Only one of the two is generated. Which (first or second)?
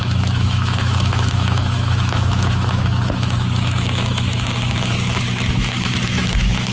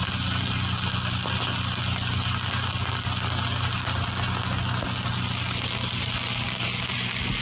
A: first